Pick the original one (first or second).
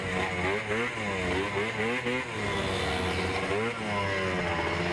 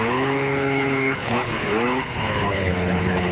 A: first